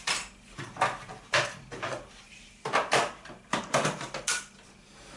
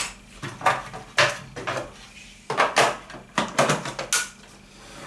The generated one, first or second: first